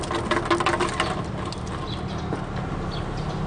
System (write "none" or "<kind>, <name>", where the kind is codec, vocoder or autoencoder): none